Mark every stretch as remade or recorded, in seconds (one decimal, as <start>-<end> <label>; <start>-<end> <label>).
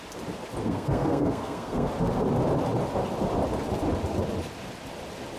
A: 0.0-0.6 recorded; 0.6-1.9 remade; 1.9-5.4 recorded